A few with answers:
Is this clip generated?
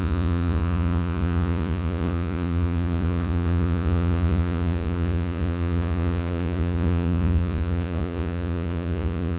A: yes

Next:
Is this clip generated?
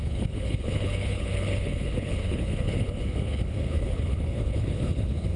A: yes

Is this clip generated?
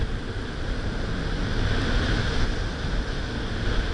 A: no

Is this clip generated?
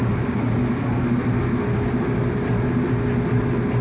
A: no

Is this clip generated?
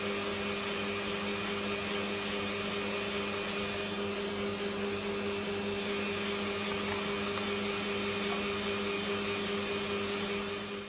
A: no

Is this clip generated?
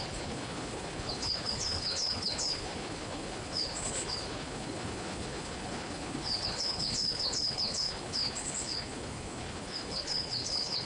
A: yes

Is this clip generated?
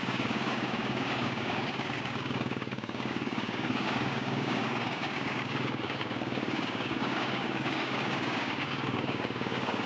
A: yes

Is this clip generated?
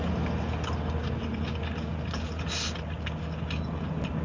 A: no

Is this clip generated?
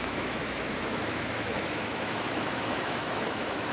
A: yes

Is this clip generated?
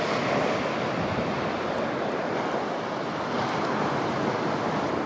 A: no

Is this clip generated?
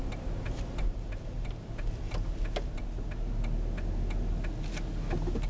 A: no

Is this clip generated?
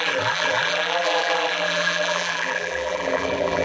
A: yes